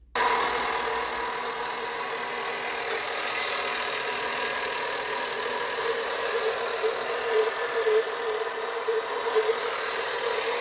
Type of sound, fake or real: real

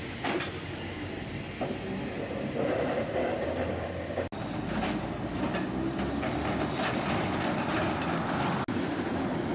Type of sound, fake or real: real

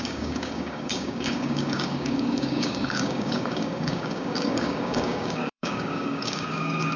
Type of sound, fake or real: fake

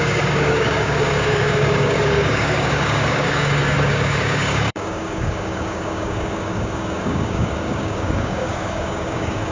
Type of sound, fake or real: fake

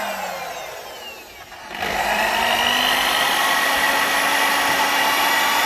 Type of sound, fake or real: real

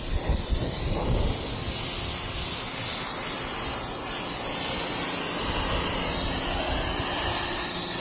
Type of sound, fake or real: real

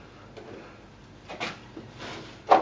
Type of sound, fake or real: real